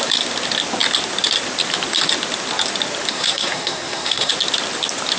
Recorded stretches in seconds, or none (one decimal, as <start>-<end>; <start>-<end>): 0.0-3.1; 4.3-5.2